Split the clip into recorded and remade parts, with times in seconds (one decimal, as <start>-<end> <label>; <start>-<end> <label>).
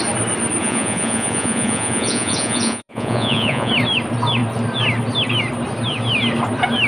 0.0-0.6 recorded; 0.6-3.7 remade; 3.7-6.9 recorded